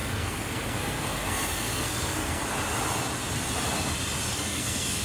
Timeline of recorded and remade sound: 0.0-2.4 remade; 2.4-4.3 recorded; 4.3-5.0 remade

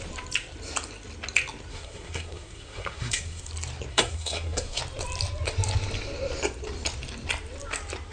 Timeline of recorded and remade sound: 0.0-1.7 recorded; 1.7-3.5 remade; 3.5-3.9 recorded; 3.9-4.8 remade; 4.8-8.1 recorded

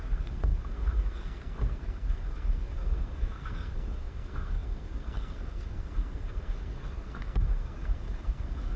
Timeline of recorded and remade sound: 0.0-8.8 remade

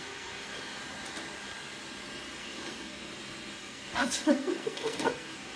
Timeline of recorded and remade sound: 0.0-0.8 remade; 0.8-2.4 recorded; 2.4-3.1 remade; 3.1-3.6 recorded; 3.6-5.6 remade

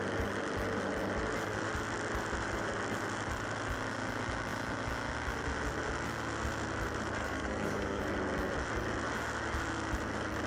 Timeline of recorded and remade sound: 0.0-7.2 recorded; 7.2-8.0 remade; 8.0-10.5 recorded